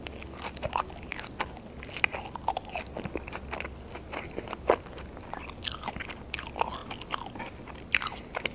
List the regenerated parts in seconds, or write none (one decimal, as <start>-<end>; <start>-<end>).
none

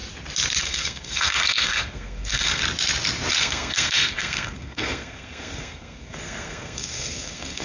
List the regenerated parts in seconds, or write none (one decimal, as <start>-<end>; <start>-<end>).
0.6-2.6; 3.4-7.6

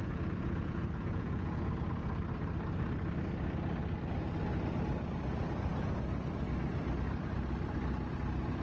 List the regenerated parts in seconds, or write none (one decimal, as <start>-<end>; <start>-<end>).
0.0-1.7

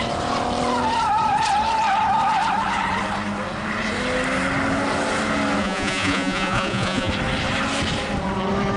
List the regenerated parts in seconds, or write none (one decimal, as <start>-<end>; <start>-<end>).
5.6-7.1

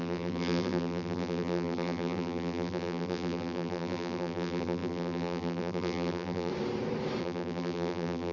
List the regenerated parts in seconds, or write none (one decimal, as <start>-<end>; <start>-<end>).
0.0-6.5; 7.2-8.3

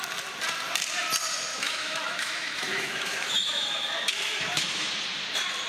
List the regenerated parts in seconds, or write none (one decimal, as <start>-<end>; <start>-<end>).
1.5-4.9

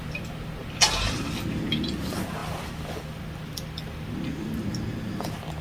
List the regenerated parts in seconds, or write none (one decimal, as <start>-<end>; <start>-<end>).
0.6-1.3; 2.4-4.6

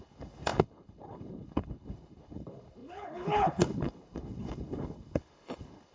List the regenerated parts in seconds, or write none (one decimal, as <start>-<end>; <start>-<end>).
0.0-5.9